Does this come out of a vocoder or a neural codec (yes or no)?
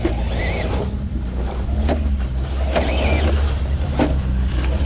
no